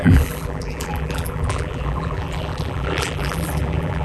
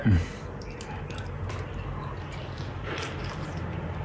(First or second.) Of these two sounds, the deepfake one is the first